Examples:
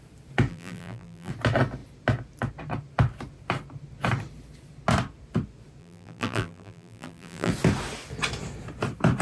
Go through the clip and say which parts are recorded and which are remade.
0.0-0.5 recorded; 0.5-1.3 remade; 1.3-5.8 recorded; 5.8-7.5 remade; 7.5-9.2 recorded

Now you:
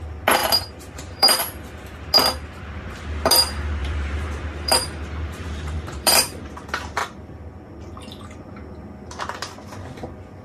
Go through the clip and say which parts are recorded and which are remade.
0.0-0.4 recorded; 0.4-1.4 remade; 1.4-3.8 recorded; 3.8-6.5 remade; 6.5-7.0 recorded; 7.0-7.8 remade; 7.8-10.4 recorded

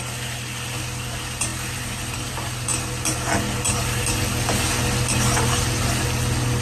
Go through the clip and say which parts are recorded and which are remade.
0.0-1.5 recorded; 1.5-2.3 remade; 2.3-6.6 recorded

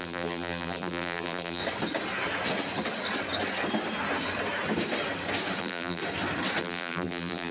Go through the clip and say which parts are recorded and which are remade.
0.0-1.6 remade; 1.6-5.6 recorded; 5.6-6.0 remade; 6.0-6.6 recorded; 6.6-7.5 remade